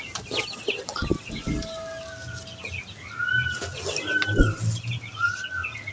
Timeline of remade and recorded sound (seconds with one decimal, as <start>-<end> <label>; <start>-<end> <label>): 0.0-5.9 recorded